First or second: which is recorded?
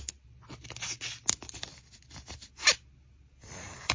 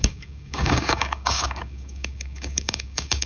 first